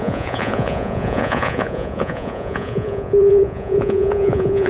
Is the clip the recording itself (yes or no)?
no